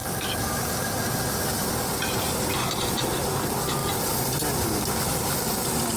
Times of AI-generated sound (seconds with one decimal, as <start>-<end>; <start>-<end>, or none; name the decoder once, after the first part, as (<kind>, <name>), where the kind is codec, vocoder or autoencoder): 0.0-1.8 (vocoder, BigVGAN v2); 3.8-5.3